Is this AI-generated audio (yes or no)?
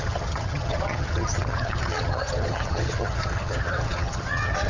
yes